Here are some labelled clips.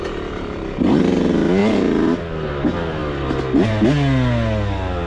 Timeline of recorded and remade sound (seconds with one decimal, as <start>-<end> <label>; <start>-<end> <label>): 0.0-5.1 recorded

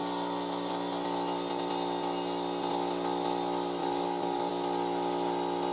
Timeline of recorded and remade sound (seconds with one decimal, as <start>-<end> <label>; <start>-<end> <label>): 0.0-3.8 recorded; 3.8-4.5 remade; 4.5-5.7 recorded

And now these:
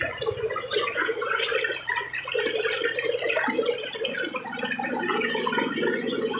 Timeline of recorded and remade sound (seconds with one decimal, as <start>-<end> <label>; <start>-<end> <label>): 0.0-1.5 remade; 1.5-4.9 recorded; 4.9-6.4 remade

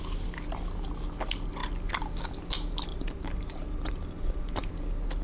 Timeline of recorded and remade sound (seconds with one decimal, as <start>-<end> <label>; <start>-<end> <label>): 0.0-2.9 recorded; 2.9-4.7 remade; 4.7-5.2 recorded

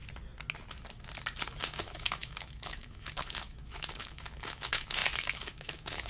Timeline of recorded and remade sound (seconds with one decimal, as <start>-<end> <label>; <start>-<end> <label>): 0.0-1.6 recorded; 1.6-6.1 remade

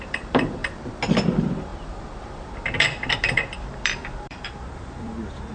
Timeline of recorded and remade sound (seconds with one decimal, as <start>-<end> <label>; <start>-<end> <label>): 0.0-0.6 remade; 0.6-1.2 recorded; 1.2-5.5 remade